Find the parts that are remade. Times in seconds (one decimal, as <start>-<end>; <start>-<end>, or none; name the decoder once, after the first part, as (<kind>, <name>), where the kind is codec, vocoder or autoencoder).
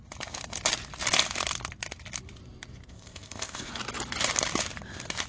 2.9-3.7 (codec, ZipCodec)